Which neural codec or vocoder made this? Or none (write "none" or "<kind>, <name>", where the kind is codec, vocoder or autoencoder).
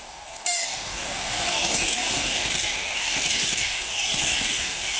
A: codec, DAC